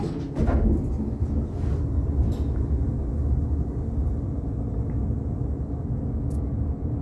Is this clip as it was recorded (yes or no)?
yes